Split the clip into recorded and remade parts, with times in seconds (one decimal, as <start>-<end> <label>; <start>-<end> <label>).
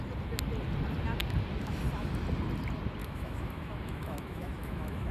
0.0-3.0 recorded; 3.0-5.1 remade